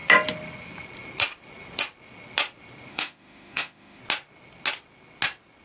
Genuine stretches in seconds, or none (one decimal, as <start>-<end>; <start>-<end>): 0.0-2.9; 4.0-5.6